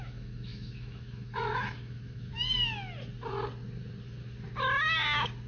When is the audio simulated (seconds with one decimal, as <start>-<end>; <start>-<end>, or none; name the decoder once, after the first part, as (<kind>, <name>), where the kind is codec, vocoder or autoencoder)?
0.0-2.3 (autoencoder, DAC-VAE)